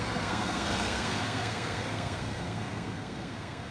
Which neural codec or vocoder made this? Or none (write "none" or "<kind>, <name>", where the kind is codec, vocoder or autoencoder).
codec, SNAC